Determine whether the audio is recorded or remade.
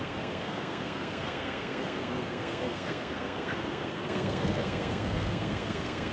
remade